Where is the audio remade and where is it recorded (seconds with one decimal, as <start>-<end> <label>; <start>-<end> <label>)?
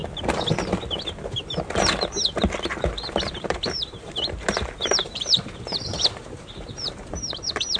0.0-2.8 recorded; 2.8-7.8 remade